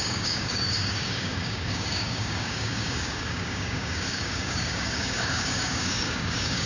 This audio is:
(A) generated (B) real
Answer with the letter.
A